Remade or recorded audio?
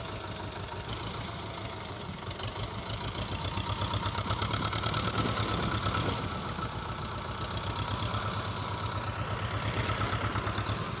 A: recorded